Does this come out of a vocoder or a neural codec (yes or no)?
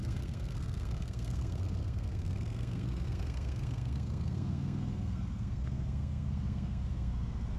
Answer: yes